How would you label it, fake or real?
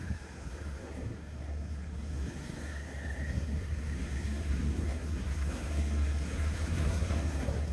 fake